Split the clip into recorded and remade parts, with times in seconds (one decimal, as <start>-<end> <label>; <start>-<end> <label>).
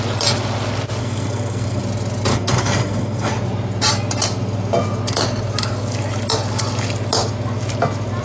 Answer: 0.0-1.0 recorded; 1.0-1.8 remade; 1.8-2.3 recorded; 2.3-3.3 remade; 3.3-8.2 recorded